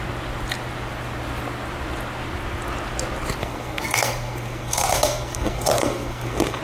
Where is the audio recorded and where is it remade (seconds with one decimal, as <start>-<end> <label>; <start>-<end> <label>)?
0.0-3.4 recorded; 3.4-6.6 remade